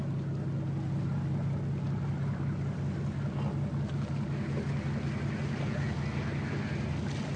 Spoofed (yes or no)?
no